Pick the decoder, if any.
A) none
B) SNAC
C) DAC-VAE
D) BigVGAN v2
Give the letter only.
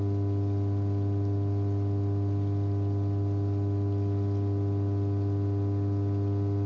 A